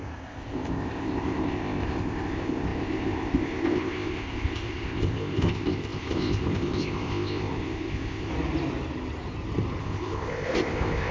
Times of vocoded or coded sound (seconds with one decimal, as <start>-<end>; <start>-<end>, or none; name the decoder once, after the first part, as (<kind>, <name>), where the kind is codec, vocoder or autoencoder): 0.0-8.3 (codec, ZipCodec); 9.8-11.1